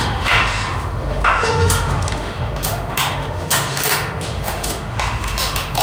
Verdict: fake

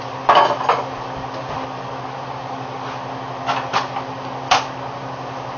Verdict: real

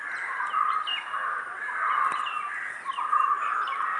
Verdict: real